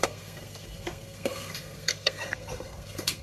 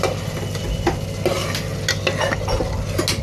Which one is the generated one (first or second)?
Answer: first